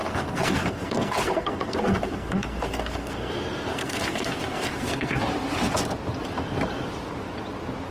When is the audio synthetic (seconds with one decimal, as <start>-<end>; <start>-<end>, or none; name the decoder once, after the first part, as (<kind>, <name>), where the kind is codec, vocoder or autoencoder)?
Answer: 0.0-3.3 (codec, SNAC); 3.7-5.2